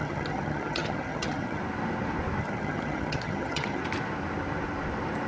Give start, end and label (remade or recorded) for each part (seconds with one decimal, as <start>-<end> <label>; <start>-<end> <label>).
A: 0.0-1.6 remade; 1.6-2.4 recorded; 2.4-3.8 remade; 3.8-5.3 recorded